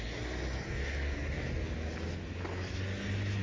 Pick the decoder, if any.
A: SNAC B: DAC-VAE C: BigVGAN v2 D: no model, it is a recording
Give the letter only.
D